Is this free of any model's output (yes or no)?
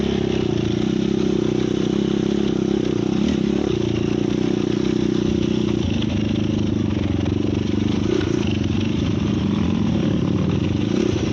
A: yes